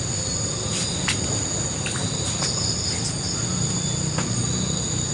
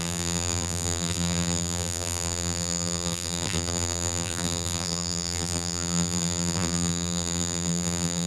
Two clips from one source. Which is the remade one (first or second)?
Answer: second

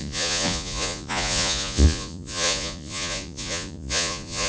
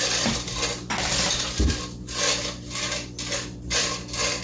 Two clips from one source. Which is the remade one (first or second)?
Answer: first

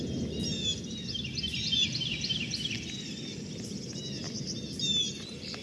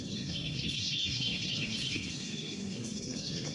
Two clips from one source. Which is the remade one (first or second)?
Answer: second